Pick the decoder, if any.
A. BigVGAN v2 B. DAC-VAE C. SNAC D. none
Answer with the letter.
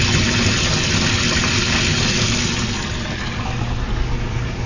D